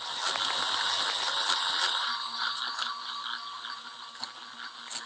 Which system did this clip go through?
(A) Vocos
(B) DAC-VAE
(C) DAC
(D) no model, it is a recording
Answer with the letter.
D